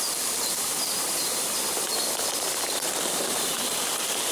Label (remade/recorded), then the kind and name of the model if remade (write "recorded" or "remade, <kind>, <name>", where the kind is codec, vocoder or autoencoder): recorded